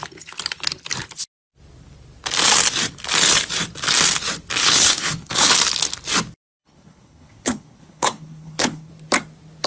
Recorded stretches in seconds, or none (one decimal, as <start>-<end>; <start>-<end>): 0.0-4.6; 5.5-6.6; 8.9-9.7